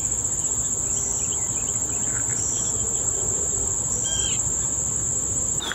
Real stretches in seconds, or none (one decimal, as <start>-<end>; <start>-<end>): 0.0-2.3